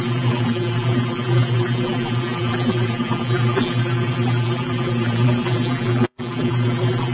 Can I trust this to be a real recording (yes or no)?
no